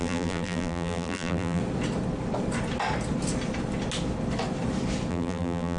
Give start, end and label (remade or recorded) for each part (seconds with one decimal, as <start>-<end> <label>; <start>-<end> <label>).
0.0-1.6 remade; 1.6-5.1 recorded; 5.1-5.8 remade